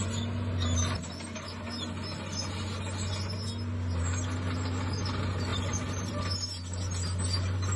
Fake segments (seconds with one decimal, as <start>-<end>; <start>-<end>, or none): none